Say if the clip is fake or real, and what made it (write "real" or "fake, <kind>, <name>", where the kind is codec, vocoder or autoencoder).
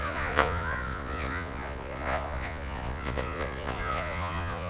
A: fake, vocoder, Vocos